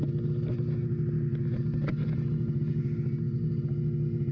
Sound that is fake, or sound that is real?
real